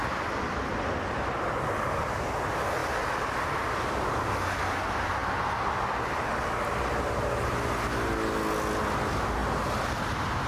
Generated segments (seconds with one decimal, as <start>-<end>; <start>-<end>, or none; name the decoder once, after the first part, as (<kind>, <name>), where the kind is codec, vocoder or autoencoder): 0.0-0.7 (vocoder, BigVGAN v2); 2.8-4.3